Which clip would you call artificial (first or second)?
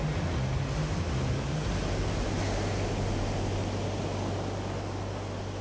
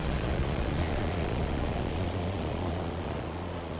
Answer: second